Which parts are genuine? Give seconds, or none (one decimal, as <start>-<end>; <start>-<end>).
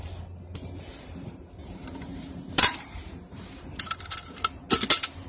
0.0-0.9; 4.0-5.3